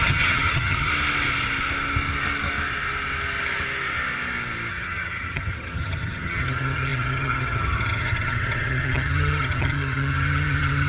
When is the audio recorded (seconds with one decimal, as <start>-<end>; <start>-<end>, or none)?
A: 0.9-4.7